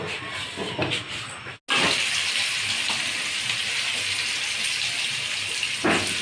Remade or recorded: recorded